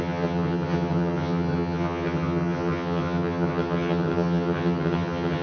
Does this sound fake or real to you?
fake